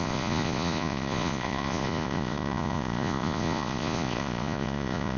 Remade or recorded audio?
remade